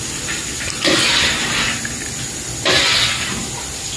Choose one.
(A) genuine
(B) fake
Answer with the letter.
A